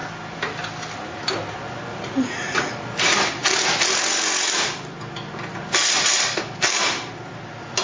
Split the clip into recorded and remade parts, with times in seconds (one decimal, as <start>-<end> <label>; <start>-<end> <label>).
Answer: 0.0-1.9 recorded; 1.9-2.7 remade; 2.7-7.8 recorded